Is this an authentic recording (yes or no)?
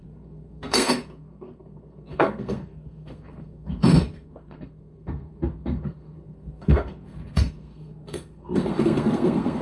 no